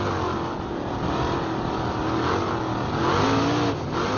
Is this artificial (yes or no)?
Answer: no